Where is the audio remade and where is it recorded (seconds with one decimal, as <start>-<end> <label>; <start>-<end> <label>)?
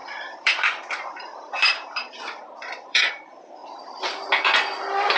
0.0-3.1 remade; 3.1-5.2 recorded